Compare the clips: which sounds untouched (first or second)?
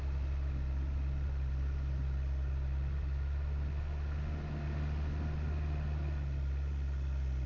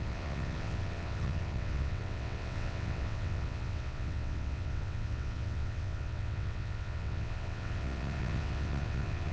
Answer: first